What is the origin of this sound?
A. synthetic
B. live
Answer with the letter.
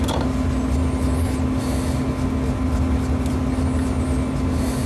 B